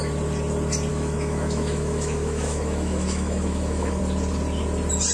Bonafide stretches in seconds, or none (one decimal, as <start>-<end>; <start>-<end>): 0.0-0.9; 4.0-5.1

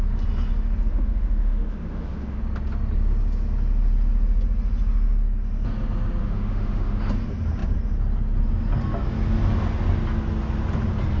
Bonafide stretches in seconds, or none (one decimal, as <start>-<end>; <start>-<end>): 0.0-0.9; 2.4-6.2; 7.0-11.2

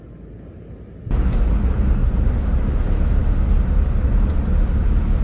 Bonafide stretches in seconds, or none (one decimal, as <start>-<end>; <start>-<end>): 0.0-2.0; 2.6-5.2

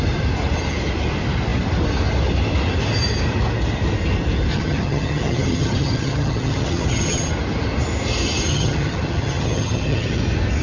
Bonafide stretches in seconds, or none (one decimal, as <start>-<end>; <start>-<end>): 0.0-4.5; 7.3-8.5; 10.2-10.6